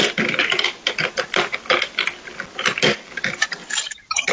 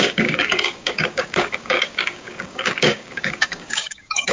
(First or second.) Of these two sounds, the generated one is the second